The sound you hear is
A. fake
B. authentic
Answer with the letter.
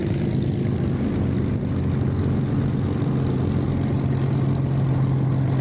B